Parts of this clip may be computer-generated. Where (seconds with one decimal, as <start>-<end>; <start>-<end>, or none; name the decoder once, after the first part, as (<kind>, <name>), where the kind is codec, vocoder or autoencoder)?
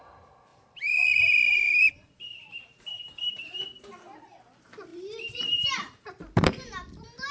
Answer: 0.5-3.8 (vocoder, BigVGAN v2); 4.9-7.3